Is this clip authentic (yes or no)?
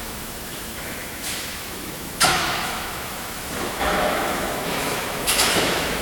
no